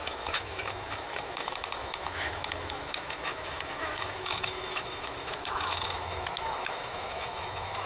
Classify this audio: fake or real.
fake